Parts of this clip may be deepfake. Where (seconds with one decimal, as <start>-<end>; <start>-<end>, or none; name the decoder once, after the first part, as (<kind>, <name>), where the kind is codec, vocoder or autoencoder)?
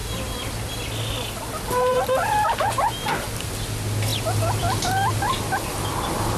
1.9-2.6 (vocoder, BigVGAN v2); 4.1-5.1